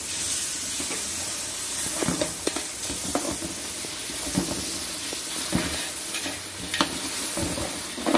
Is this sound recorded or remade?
recorded